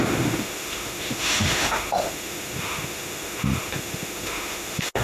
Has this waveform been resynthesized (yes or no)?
yes